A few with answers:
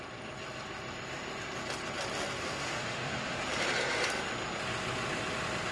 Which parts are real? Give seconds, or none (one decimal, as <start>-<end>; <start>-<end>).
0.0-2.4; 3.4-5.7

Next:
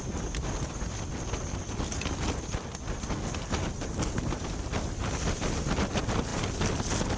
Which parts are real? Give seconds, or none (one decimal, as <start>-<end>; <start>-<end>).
0.0-7.2

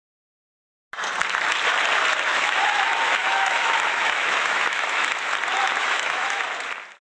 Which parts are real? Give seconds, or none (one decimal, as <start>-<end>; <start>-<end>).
0.0-2.3; 5.3-5.8; 6.4-7.1